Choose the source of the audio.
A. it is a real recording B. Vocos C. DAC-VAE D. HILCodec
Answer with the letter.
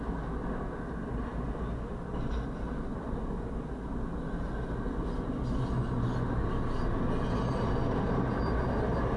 A